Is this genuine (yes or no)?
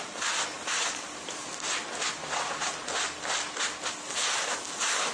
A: yes